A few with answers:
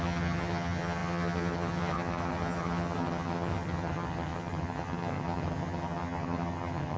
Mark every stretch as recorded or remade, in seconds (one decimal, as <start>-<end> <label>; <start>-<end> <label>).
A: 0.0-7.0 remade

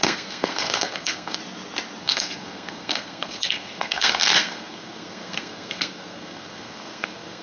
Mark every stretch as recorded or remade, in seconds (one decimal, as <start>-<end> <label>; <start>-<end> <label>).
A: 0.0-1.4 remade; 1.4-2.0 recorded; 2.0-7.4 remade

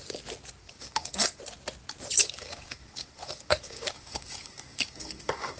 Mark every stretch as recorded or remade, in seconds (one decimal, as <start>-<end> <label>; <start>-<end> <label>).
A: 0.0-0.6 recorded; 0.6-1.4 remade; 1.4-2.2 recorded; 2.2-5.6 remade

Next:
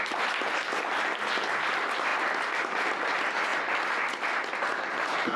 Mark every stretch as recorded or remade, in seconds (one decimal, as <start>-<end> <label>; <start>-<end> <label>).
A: 0.0-5.4 recorded